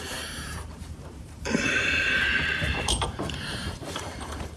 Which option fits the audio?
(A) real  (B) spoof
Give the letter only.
B